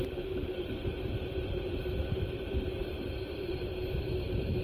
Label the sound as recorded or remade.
remade